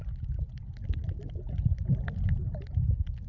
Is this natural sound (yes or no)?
yes